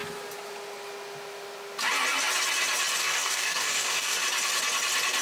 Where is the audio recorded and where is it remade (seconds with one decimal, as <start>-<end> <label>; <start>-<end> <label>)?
0.0-3.0 recorded; 3.0-4.2 remade; 4.2-5.2 recorded